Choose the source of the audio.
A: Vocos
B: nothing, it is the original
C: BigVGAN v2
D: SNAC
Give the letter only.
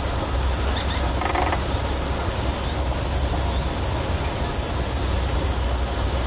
B